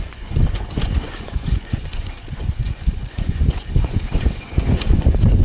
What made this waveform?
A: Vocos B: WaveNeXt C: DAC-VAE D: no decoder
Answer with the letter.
A